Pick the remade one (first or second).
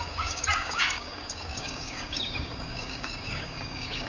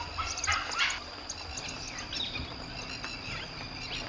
first